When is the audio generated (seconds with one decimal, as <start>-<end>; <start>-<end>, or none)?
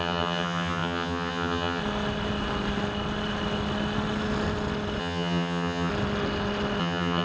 0.0-1.8; 5.0-5.9; 6.8-7.2